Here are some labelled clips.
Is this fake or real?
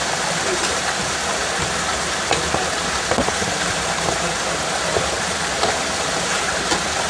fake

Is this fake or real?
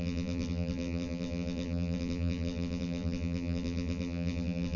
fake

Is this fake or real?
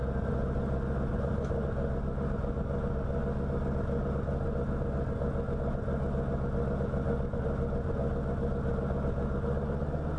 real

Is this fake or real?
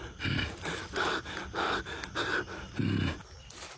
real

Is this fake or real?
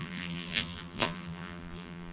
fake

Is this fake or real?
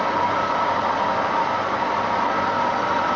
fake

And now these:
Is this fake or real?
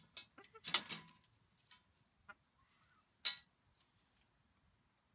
real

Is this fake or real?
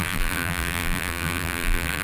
fake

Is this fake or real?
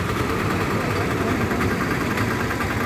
real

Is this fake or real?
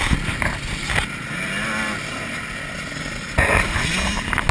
real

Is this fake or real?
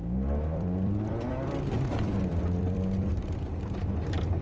fake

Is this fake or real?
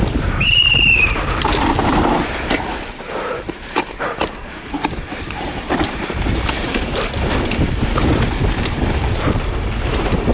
fake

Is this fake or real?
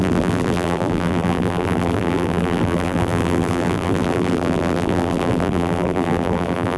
fake